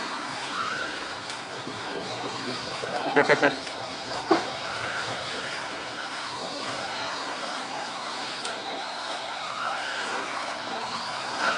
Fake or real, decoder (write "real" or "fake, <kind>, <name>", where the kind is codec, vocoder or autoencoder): fake, codec, SNAC